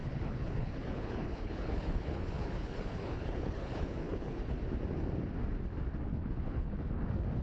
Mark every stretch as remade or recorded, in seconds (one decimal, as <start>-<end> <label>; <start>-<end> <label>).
0.0-4.4 remade; 4.4-6.1 recorded; 6.1-6.9 remade; 6.9-7.4 recorded